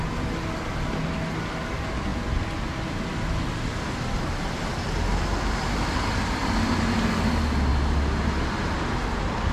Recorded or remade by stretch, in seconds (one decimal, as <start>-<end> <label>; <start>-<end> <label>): 0.0-9.5 recorded